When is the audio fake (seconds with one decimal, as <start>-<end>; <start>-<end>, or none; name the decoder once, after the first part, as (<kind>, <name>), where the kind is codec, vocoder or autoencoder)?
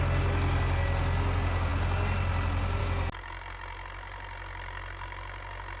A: none